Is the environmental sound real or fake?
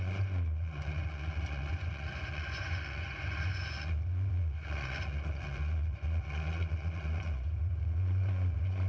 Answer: fake